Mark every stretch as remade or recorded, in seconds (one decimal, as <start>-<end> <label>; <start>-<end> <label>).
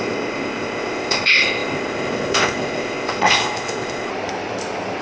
0.0-4.1 remade; 4.1-5.0 recorded